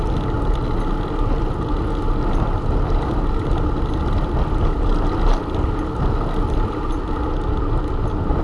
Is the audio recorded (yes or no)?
yes